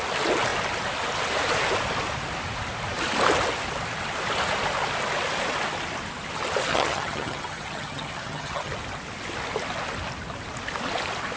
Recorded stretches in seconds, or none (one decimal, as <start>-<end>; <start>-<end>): 0.0-6.7; 8.7-11.4